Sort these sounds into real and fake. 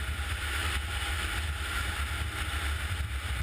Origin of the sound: real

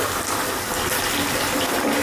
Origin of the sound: fake